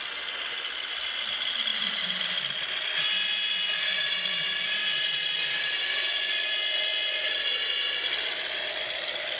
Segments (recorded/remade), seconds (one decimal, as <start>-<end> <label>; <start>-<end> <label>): 0.0-1.7 recorded; 1.7-2.2 remade; 2.2-3.9 recorded; 3.9-6.1 remade; 6.1-9.4 recorded